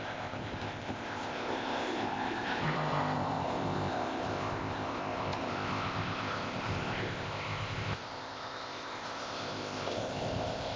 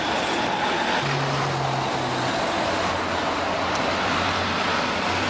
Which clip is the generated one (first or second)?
first